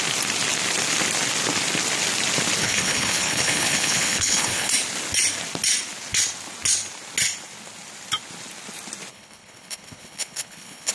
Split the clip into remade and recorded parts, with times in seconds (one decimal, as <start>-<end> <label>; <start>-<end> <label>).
0.0-2.6 recorded; 2.6-4.7 remade; 4.7-9.1 recorded; 9.1-10.9 remade